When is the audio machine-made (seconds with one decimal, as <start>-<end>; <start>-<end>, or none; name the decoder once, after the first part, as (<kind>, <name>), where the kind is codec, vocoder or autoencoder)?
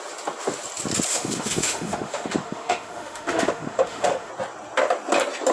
1.1-4.3 (autoencoder, DAC-VAE)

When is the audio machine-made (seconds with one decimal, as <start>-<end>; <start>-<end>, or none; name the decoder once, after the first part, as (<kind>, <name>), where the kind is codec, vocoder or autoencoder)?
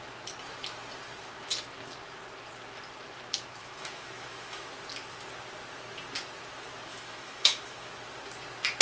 3.6-4.7 (autoencoder, DAC-VAE); 6.9-7.9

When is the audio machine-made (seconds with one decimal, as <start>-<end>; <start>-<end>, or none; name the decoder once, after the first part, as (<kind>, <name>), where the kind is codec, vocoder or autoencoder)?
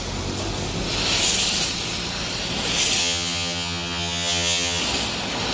3.0-4.8 (vocoder, HiFi-GAN)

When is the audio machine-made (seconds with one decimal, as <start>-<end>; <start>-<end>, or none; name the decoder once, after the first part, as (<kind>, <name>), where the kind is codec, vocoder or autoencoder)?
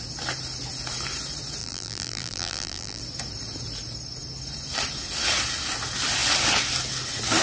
1.6-3.0 (vocoder, BigVGAN v2)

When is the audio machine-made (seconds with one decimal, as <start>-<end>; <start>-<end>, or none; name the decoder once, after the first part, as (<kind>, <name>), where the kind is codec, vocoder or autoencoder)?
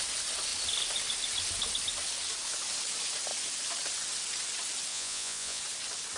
4.9-5.6 (vocoder, Vocos)